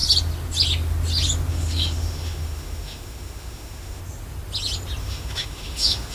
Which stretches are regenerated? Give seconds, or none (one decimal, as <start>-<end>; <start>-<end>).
1.5-4.0; 5.0-6.1